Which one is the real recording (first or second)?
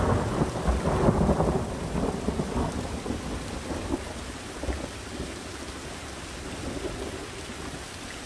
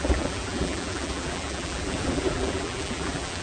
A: first